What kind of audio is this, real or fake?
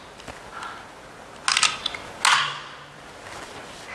real